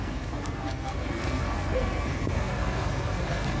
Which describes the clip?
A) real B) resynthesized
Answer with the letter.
B